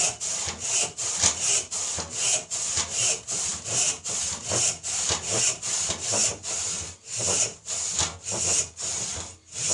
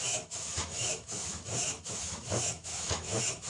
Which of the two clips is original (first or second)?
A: first